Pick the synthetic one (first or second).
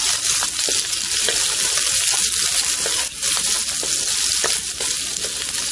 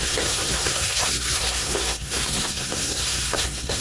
second